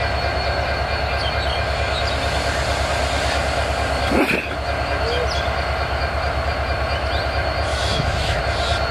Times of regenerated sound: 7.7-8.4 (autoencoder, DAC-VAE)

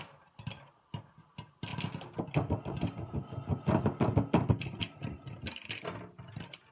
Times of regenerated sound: none

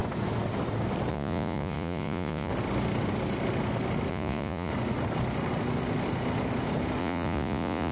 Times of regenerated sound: 1.1-2.5 (vocoder, Vocos); 4.1-4.7; 7.0-7.9

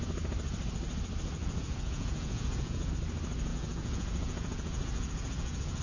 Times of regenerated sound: 1.4-2.9 (vocoder, Vocos); 3.5-5.8

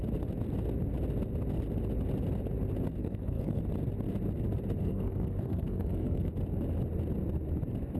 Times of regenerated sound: 3.0-3.6 (codec, SNAC); 4.8-6.3

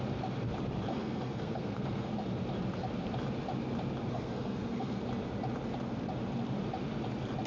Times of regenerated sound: 0.9-2.1 (codec, SNAC); 4.1-5.0

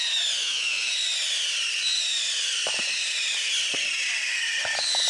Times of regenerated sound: 0.4-0.9 (autoencoder, DAC-VAE)